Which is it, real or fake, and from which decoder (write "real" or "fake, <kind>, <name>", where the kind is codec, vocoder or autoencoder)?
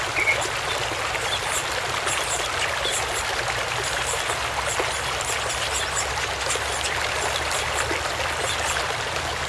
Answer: real